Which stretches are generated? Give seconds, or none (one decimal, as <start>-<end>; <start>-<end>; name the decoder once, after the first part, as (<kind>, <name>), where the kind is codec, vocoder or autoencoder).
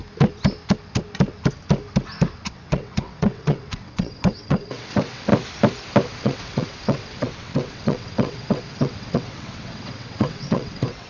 2.4-5.3 (vocoder, WaveNeXt); 6.2-11.1